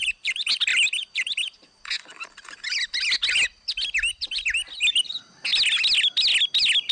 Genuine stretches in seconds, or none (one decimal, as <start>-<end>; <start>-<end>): 0.0-6.9